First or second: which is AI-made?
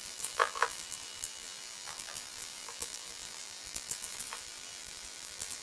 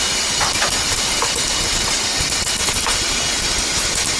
first